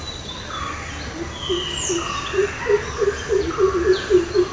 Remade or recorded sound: recorded